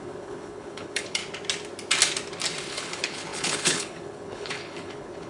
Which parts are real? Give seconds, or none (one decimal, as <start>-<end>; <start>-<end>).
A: 1.2-2.7